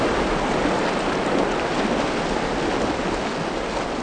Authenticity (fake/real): real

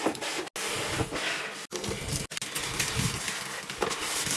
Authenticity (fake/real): real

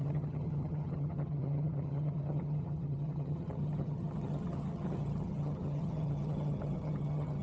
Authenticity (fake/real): fake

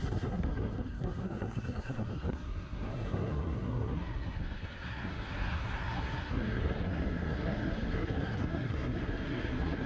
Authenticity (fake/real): fake